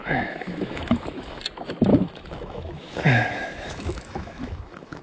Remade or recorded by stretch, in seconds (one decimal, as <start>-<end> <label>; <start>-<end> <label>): 0.0-1.4 remade; 1.4-1.9 recorded; 1.9-5.0 remade